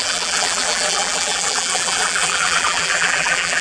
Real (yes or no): no